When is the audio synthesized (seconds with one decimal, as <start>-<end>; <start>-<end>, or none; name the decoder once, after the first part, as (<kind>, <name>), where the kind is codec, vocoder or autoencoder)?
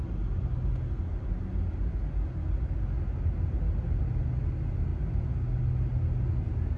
none